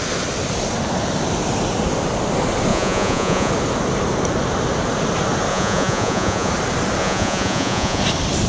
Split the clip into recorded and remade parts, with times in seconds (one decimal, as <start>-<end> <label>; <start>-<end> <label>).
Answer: 0.0-2.7 recorded; 2.7-3.5 remade; 3.5-5.5 recorded; 5.5-6.5 remade; 6.5-7.0 recorded; 7.0-8.0 remade; 8.0-8.5 recorded